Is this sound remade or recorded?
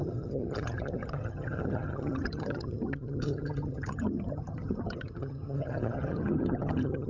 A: remade